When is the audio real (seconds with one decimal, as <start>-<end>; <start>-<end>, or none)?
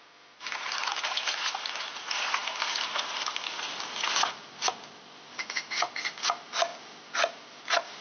0.0-8.0